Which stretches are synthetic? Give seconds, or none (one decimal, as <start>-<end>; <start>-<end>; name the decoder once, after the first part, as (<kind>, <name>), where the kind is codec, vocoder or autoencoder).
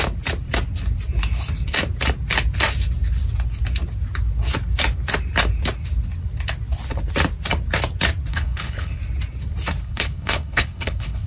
8.3-9.0 (codec, HILCodec); 9.8-11.3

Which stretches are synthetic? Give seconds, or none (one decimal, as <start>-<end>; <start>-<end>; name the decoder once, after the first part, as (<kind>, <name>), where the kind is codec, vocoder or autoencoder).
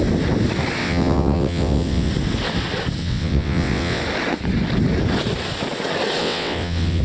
0.8-2.1 (vocoder, WaveNeXt); 3.0-4.0; 6.2-7.0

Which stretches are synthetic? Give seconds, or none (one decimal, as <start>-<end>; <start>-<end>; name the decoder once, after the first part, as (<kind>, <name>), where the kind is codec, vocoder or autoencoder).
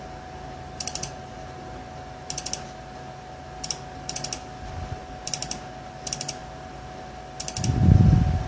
none